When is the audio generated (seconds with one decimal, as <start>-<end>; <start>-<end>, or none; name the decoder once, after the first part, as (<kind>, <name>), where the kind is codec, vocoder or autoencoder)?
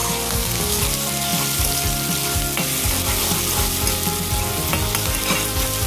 0.0-0.8 (codec, DAC)